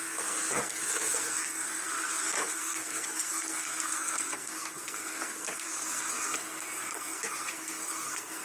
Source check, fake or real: fake